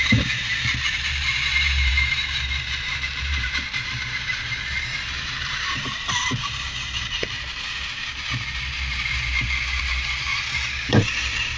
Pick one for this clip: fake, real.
fake